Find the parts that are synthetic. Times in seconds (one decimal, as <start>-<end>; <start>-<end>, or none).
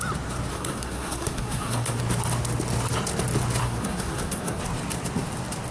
0.5-2.0; 3.6-4.6